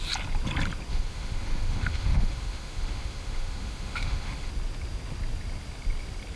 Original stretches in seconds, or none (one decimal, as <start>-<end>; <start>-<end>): 0.0-0.9; 4.5-6.4